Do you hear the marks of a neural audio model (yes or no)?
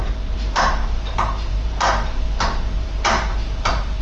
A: yes